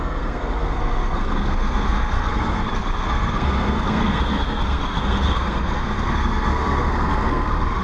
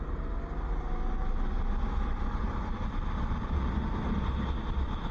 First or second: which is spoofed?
first